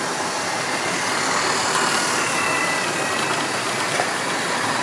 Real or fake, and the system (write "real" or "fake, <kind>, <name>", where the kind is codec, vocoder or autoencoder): fake, vocoder, BigVGAN v2